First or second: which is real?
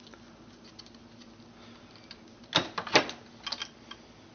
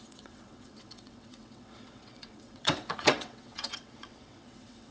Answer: first